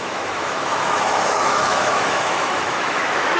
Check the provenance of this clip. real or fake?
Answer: fake